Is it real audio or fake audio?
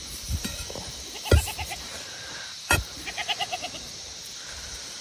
fake